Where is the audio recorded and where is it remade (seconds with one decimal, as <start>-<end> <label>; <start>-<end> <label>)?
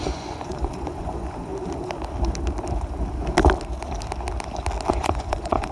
0.0-1.5 remade; 1.5-4.9 recorded; 4.9-5.7 remade